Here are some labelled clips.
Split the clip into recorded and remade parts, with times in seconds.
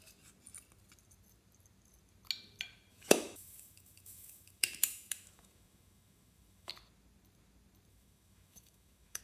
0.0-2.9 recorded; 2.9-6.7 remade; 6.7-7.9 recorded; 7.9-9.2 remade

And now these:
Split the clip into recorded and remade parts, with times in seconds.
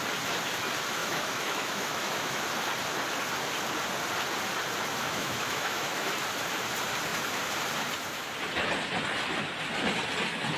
0.0-1.0 recorded; 1.0-2.4 remade; 2.4-5.0 recorded; 5.0-6.1 remade; 6.1-10.6 recorded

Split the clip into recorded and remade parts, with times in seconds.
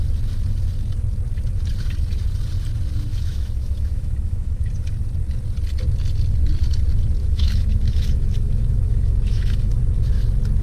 0.0-3.1 recorded; 3.1-4.7 remade; 4.7-7.2 recorded; 7.2-9.8 remade; 9.8-10.6 recorded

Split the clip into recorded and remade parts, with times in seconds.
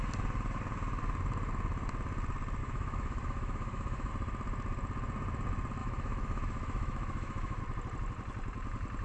0.0-2.6 recorded; 2.6-4.1 remade; 4.1-5.8 recorded; 5.8-7.6 remade; 7.6-9.0 recorded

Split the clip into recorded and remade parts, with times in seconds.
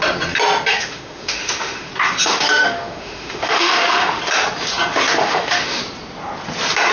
0.0-0.7 recorded; 0.7-1.9 remade; 1.9-2.3 recorded; 2.3-4.2 remade; 4.2-5.2 recorded; 5.2-5.8 remade; 5.8-6.9 recorded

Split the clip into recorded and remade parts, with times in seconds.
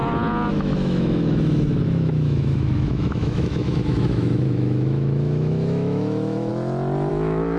0.0-0.5 recorded; 0.5-6.5 remade; 6.5-7.1 recorded; 7.1-7.6 remade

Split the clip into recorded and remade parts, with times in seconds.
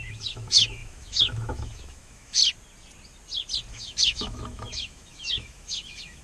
0.0-2.4 remade; 2.4-3.7 recorded; 3.7-6.2 remade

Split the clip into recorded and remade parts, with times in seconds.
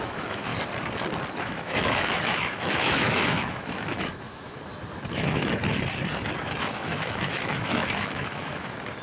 0.0-0.5 remade; 0.5-1.3 recorded; 1.3-4.6 remade; 4.6-5.1 recorded; 5.1-5.6 remade; 5.6-6.6 recorded; 6.6-9.0 remade